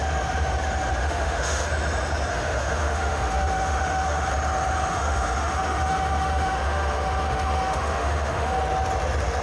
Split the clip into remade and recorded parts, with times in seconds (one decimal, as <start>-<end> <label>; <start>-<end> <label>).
0.0-1.0 recorded; 1.0-1.7 remade; 1.7-2.3 recorded; 2.3-4.3 remade; 4.3-4.9 recorded; 4.9-8.6 remade; 8.6-9.4 recorded